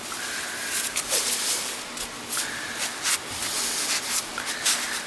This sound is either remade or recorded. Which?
recorded